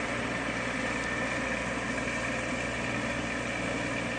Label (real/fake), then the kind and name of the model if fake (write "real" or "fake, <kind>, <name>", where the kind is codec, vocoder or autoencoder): real